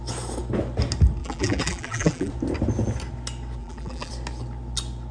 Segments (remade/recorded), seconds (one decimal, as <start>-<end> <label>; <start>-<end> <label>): 0.0-1.2 recorded; 1.2-2.3 remade; 2.3-3.6 recorded; 3.6-4.1 remade; 4.1-5.1 recorded